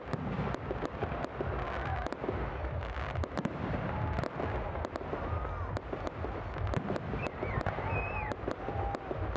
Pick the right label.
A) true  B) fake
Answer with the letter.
A